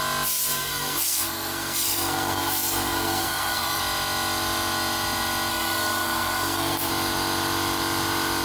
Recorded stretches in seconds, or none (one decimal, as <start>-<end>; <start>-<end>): 0.0-0.5; 3.8-5.5; 6.9-8.4